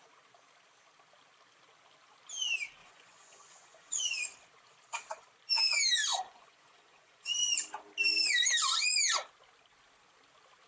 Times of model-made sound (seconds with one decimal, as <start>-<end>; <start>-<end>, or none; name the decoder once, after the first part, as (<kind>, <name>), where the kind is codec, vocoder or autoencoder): 2.8-4.0 (vocoder, Vocos); 6.1-7.5